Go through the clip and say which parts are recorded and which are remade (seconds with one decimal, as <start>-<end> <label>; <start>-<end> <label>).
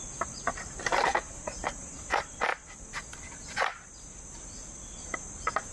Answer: 0.0-2.5 remade; 2.5-5.0 recorded; 5.0-5.7 remade